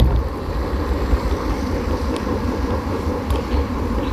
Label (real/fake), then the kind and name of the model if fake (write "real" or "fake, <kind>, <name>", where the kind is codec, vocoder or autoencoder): fake, vocoder, BigVGAN v2